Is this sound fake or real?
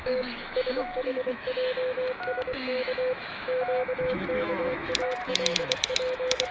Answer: fake